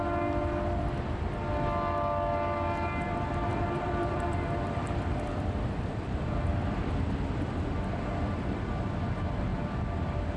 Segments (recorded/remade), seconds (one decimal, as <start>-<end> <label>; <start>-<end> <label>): 0.0-3.5 recorded; 3.5-6.3 remade; 6.3-10.4 recorded